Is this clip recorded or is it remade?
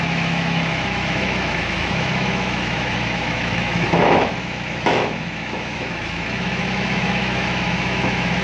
remade